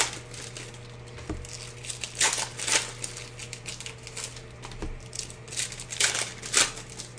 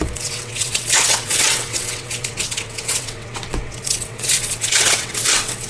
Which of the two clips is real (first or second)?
first